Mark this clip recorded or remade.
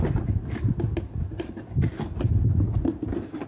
recorded